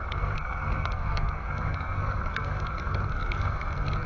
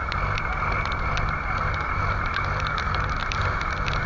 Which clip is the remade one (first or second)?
first